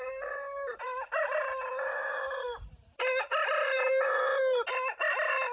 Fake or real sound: real